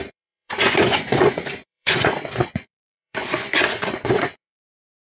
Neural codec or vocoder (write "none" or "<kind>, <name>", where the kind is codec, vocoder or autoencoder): vocoder, Vocos